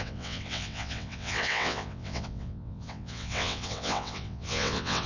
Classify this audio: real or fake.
fake